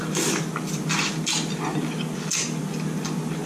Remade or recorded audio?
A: recorded